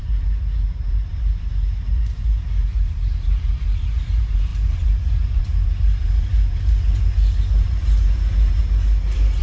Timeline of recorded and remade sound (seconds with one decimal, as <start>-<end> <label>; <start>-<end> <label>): 0.0-8.6 remade; 8.6-9.4 recorded